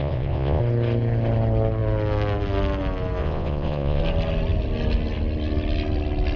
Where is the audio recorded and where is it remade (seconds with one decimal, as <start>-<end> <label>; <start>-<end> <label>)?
0.0-0.6 remade; 0.6-3.2 recorded; 3.2-4.0 remade; 4.0-6.4 recorded